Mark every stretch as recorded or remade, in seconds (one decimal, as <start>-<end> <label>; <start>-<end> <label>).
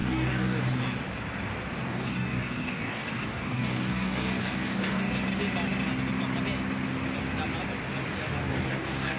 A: 0.0-0.6 remade; 0.6-1.8 recorded; 1.8-5.1 remade; 5.1-8.5 recorded; 8.5-9.2 remade